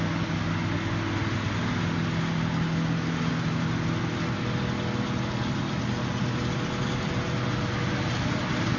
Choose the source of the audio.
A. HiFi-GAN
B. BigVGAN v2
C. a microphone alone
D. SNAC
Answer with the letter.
C